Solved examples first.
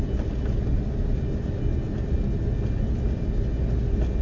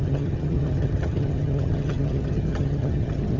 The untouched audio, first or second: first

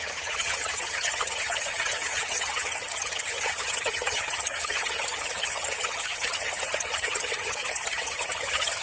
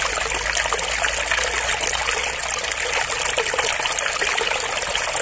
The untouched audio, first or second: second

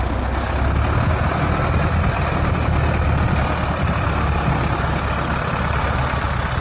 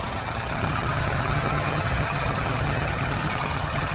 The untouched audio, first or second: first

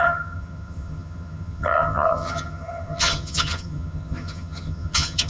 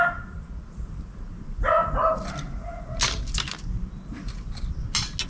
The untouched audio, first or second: second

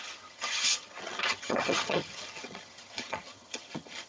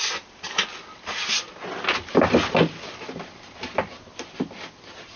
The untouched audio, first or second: second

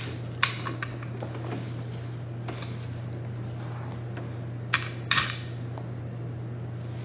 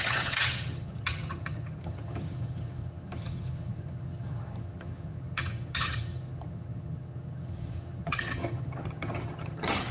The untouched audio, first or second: first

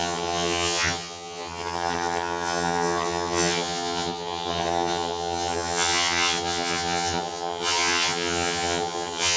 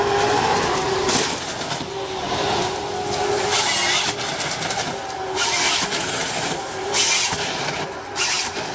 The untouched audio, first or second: second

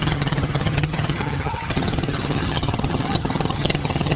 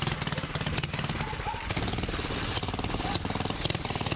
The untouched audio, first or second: second